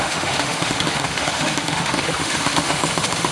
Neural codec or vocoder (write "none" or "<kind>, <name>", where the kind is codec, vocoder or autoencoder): autoencoder, DAC-VAE